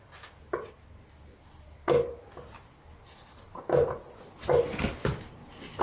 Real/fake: real